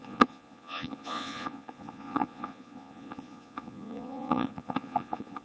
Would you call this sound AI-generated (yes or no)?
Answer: yes